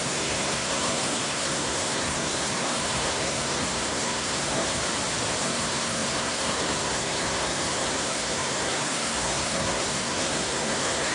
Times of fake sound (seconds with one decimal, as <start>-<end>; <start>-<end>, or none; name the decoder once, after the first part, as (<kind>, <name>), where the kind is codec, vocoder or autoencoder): 0.0-4.8 (codec, SNAC); 5.4-11.1